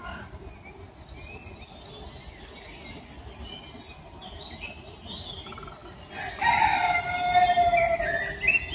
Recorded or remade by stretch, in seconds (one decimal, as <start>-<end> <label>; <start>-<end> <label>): 0.0-5.8 recorded; 5.8-8.0 remade; 8.0-8.7 recorded